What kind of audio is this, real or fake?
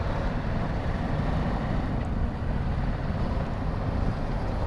fake